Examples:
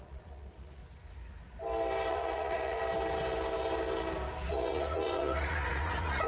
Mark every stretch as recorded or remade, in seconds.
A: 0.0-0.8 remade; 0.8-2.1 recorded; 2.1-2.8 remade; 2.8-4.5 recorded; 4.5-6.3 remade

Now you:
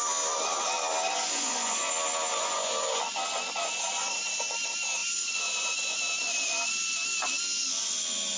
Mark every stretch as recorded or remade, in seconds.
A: 0.0-1.1 recorded; 1.1-1.9 remade; 1.9-2.3 recorded; 2.3-3.0 remade; 3.0-5.0 recorded; 5.0-6.0 remade; 6.0-8.4 recorded

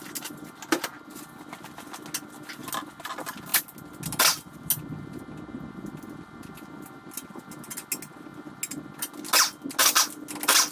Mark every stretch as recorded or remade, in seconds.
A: 0.0-10.7 recorded

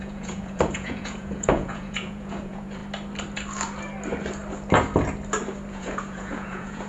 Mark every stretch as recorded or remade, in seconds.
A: 0.0-2.8 remade; 2.8-5.7 recorded; 5.7-6.9 remade

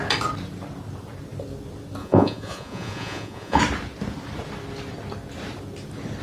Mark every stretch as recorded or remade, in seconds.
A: 0.0-2.0 recorded; 2.0-3.6 remade; 3.6-6.2 recorded

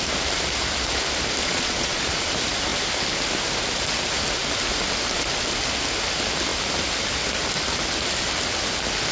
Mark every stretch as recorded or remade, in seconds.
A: 0.0-1.4 recorded; 1.4-2.0 remade; 2.0-9.1 recorded

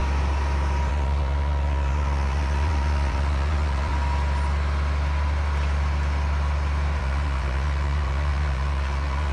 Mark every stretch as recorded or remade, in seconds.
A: 0.0-0.9 recorded; 0.9-3.9 remade; 3.9-7.0 recorded; 7.0-9.3 remade

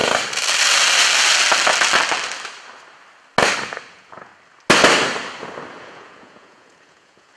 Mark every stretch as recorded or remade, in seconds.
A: 0.0-3.9 recorded; 3.9-4.3 remade; 4.3-5.8 recorded; 5.8-7.4 remade